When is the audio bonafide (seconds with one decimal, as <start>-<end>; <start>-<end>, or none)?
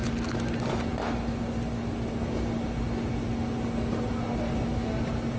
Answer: 0.0-5.4